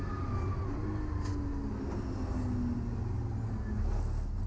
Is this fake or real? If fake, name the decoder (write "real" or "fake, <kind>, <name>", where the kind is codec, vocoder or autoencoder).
real